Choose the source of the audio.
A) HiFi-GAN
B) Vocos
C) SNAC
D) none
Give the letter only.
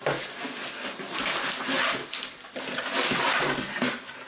D